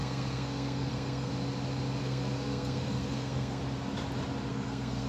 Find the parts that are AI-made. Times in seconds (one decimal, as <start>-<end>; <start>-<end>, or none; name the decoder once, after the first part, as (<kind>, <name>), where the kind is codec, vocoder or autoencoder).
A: 0.0-1.3 (codec, SNAC); 2.0-3.6; 4.5-5.1